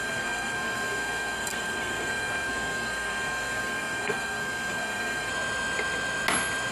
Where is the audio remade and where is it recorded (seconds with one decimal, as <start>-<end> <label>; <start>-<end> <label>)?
0.0-5.3 remade; 5.3-6.7 recorded